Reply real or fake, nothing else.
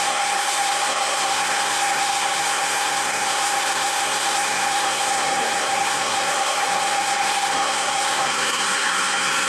fake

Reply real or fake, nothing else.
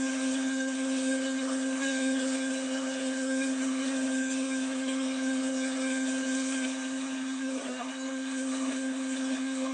fake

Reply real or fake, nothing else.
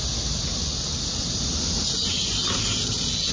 real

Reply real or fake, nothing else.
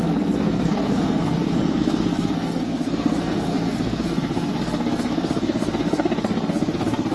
fake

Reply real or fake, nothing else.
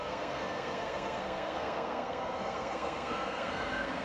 fake